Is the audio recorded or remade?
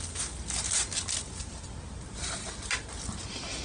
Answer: recorded